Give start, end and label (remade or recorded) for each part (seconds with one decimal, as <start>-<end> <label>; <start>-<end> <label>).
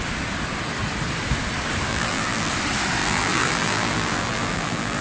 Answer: 0.0-1.9 recorded; 1.9-2.5 remade; 2.5-3.0 recorded; 3.0-5.0 remade